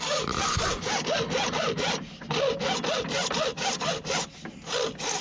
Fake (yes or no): no